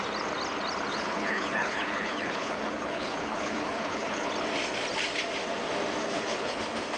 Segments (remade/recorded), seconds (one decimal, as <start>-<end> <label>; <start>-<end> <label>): 0.0-0.9 recorded; 0.9-4.3 remade; 4.3-6.0 recorded; 6.0-6.6 remade; 6.6-7.0 recorded